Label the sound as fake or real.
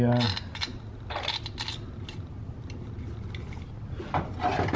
real